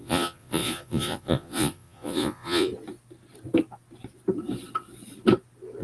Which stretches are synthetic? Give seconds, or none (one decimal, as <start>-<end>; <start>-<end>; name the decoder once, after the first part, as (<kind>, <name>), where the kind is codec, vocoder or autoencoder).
0.0-2.7 (vocoder, Vocos)